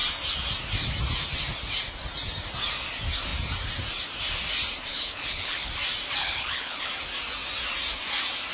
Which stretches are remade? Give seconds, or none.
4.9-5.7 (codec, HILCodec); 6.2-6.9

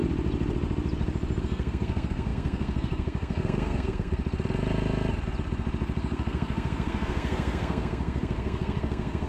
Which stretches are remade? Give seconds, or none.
1.4-4.2 (codec, SNAC); 6.0-9.3